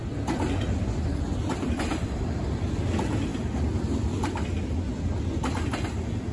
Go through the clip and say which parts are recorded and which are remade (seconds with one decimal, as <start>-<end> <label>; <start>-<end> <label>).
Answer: 0.0-1.9 recorded; 1.9-2.6 remade; 2.6-6.3 recorded